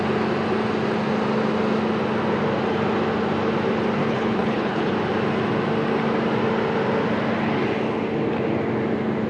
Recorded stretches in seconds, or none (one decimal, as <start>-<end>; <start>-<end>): 0.0-4.0; 4.9-9.3